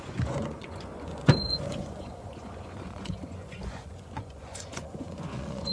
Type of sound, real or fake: fake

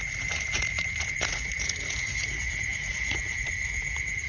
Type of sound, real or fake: fake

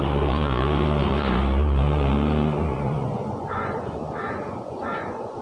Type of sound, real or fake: fake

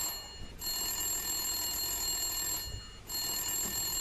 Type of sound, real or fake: real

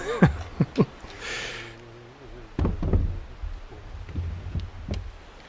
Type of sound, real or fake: real